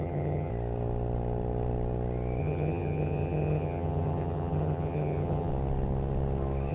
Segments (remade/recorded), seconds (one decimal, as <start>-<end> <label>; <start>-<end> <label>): 0.0-0.5 remade; 0.5-2.4 recorded; 2.4-5.5 remade; 5.5-6.7 recorded